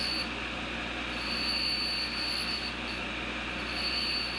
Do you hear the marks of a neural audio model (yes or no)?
no